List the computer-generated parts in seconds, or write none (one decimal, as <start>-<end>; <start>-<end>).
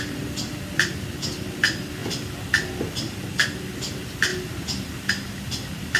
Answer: none